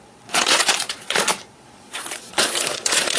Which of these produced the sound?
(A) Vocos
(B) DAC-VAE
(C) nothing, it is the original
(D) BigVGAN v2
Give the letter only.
A